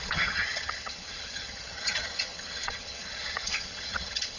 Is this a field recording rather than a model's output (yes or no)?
no